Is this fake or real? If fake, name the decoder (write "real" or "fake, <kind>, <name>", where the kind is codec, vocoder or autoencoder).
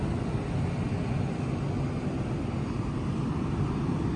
real